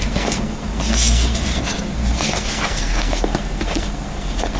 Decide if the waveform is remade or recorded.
remade